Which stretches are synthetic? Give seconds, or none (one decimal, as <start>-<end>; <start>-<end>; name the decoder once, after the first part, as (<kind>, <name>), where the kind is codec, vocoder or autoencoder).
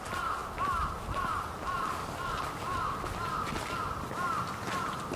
none